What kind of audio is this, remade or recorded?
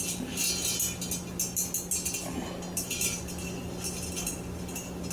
recorded